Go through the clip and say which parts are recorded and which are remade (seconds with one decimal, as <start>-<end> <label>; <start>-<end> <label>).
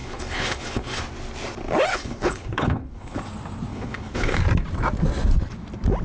0.0-1.0 remade; 1.0-1.9 recorded; 1.9-3.2 remade; 3.2-3.7 recorded; 3.7-4.4 remade; 4.4-6.0 recorded